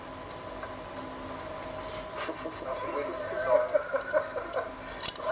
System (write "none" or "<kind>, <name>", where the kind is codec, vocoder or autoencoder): none